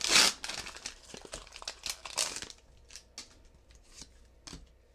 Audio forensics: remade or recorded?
recorded